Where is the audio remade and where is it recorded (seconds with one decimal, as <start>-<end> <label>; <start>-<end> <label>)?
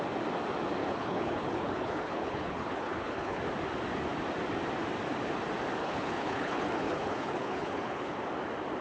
0.0-0.8 recorded; 0.8-3.4 remade; 3.4-5.8 recorded; 5.8-8.2 remade; 8.2-8.8 recorded